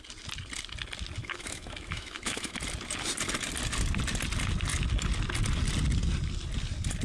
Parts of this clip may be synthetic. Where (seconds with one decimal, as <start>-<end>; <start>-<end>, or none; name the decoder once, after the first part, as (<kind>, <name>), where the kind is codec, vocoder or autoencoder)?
1.2-2.6 (autoencoder, DAC-VAE)